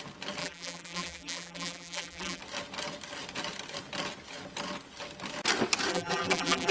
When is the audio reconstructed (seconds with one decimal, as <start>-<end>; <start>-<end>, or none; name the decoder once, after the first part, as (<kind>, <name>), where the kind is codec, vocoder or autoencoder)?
0.4-2.4 (vocoder, BigVGAN v2); 5.9-6.7